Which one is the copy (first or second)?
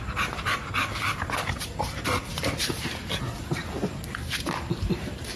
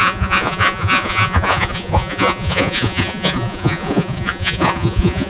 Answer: second